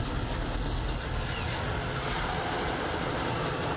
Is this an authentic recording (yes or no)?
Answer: yes